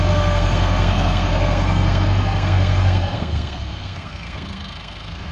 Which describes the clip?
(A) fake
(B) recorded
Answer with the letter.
A